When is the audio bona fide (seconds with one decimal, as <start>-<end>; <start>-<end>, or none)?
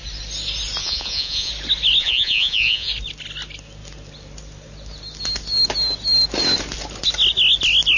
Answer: 0.0-0.8; 1.5-2.0; 2.9-8.0